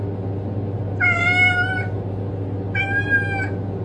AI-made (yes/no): no